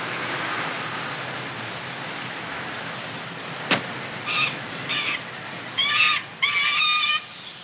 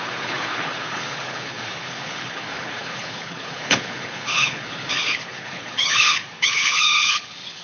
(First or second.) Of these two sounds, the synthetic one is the second